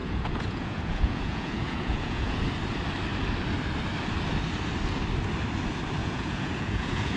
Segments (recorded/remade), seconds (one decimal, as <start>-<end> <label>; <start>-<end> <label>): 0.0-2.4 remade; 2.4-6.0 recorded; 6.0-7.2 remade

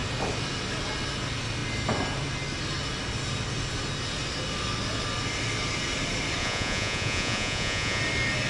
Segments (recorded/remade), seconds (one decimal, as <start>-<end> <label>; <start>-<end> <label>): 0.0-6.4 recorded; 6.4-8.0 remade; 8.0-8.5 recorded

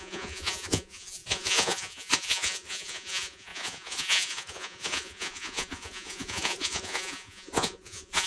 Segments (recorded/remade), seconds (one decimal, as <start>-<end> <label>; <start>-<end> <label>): 0.0-8.3 remade